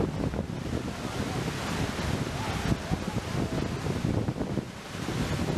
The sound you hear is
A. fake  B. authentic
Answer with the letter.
B